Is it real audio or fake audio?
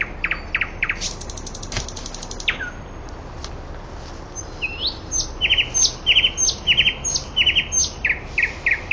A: real